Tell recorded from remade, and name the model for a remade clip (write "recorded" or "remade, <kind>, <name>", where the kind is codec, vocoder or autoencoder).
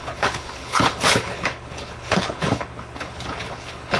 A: remade, codec, HILCodec